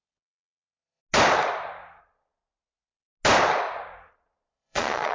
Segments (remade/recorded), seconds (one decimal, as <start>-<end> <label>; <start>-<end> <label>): 0.0-1.0 remade; 1.0-2.0 recorded; 2.0-2.4 remade; 2.4-4.1 recorded; 4.1-5.1 remade